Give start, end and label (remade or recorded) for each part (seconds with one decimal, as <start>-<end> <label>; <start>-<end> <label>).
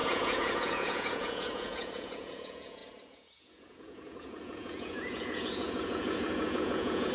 0.0-7.1 remade